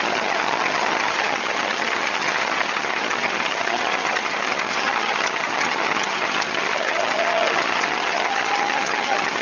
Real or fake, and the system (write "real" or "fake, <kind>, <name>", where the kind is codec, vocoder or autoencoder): fake, vocoder, HiFi-GAN